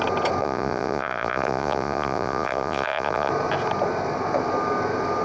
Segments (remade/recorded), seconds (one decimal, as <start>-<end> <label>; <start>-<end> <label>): 0.0-0.4 recorded; 0.4-3.3 remade; 3.3-5.2 recorded